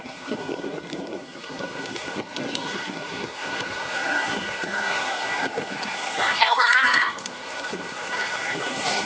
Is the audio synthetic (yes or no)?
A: yes